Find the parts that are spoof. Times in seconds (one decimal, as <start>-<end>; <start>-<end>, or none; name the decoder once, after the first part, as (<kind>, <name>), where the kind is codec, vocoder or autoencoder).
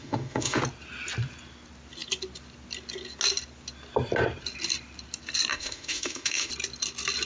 0.0-0.6 (autoencoder, DAC-VAE); 5.5-6.5